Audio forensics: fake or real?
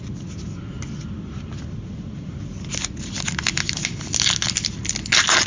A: real